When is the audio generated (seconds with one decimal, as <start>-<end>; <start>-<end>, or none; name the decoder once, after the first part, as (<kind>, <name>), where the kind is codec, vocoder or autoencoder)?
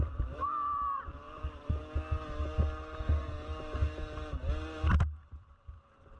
0.0-1.8 (vocoder, BigVGAN v2); 4.9-6.2